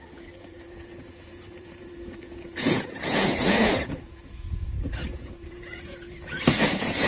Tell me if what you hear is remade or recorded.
remade